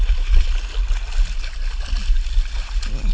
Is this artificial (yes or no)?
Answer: no